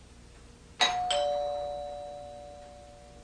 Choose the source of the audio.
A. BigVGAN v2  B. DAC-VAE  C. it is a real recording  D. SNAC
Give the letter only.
C